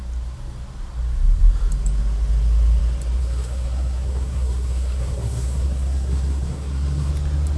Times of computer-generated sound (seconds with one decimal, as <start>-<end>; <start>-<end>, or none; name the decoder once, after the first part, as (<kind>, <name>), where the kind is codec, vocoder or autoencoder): 3.2-7.1 (codec, SNAC)